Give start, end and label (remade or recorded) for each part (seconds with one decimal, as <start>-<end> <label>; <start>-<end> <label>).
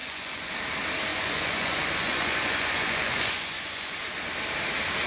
0.0-0.5 remade; 0.5-1.1 recorded; 1.1-4.0 remade; 4.0-5.1 recorded